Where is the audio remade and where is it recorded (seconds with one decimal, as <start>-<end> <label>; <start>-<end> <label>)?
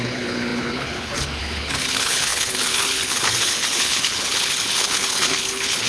0.0-5.9 remade